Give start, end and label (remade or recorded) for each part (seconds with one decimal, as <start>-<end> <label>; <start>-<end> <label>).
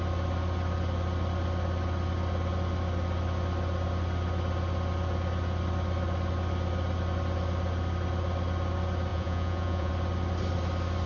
0.0-9.1 recorded; 9.1-9.9 remade; 9.9-11.1 recorded